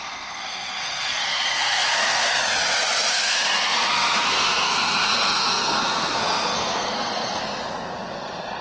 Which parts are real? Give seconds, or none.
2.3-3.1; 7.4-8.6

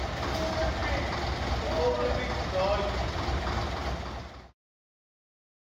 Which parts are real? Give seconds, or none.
0.0-5.7

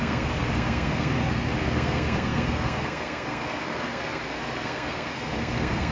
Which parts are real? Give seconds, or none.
none

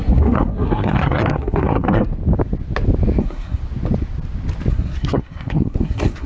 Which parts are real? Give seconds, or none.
2.1-3.2; 3.6-4.7

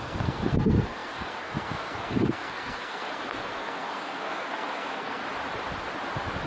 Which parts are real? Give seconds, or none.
5.2-6.5

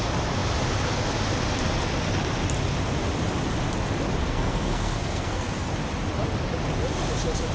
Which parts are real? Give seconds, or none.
0.0-4.2; 5.7-7.5

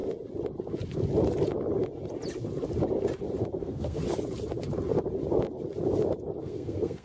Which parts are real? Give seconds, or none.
0.0-3.6; 4.0-6.4